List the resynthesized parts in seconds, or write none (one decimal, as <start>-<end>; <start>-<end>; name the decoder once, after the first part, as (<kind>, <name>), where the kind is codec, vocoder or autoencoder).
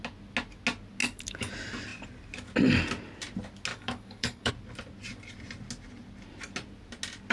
1.0-1.5 (codec, DAC); 3.7-4.5